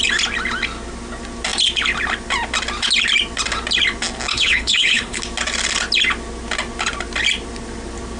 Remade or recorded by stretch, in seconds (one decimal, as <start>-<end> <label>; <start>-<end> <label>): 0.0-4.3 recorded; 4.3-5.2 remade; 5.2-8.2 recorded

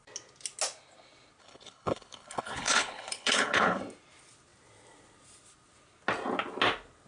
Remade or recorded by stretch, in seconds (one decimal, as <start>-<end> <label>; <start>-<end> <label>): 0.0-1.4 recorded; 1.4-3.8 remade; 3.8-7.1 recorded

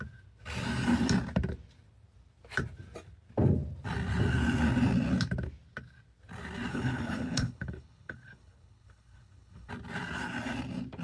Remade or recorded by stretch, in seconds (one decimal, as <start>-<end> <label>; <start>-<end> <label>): 0.0-6.7 recorded; 6.7-9.7 remade; 9.7-11.0 recorded

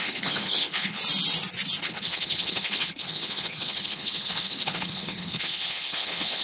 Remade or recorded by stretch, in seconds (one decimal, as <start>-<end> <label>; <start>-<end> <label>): 0.0-1.0 remade; 1.0-1.8 recorded; 1.8-6.4 remade

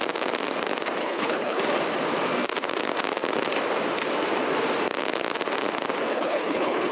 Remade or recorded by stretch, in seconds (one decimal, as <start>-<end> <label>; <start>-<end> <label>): 0.0-1.0 recorded; 1.0-1.6 remade; 1.6-6.1 recorded; 6.1-6.9 remade

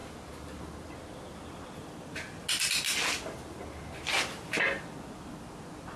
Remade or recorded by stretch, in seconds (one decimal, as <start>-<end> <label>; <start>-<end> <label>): 0.0-6.0 recorded

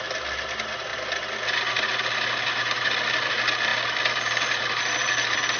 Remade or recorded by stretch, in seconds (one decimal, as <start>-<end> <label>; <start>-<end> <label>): 0.0-5.6 recorded